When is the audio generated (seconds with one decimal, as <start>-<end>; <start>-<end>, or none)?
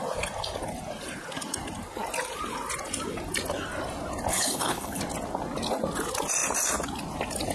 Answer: 4.3-5.0